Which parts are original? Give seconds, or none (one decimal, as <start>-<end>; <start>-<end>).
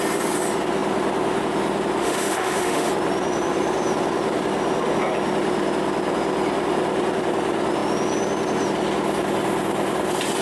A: 0.0-2.0; 2.9-10.4